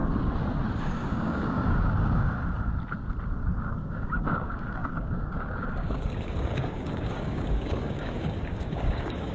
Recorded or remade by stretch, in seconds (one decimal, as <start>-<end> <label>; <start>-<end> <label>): 0.0-0.8 recorded; 0.8-2.4 remade; 2.4-3.6 recorded; 3.6-9.3 remade